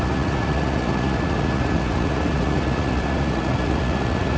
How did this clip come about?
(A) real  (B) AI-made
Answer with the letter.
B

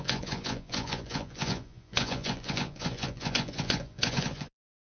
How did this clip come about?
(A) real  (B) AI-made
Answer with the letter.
B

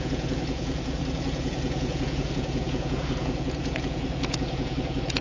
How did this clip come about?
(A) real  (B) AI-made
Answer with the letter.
B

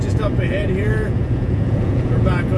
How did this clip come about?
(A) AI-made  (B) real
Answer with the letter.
A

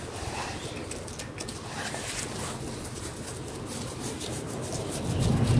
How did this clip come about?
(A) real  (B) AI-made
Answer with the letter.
A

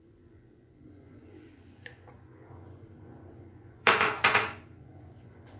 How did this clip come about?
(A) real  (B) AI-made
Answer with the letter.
B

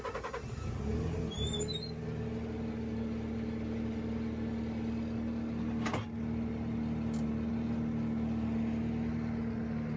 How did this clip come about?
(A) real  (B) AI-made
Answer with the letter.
A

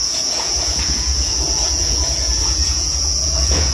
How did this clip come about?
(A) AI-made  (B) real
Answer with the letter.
A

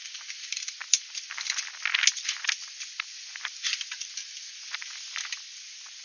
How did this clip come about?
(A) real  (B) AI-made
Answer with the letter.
A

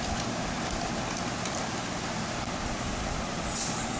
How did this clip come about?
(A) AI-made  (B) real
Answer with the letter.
B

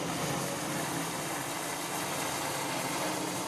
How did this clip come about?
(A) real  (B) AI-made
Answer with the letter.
A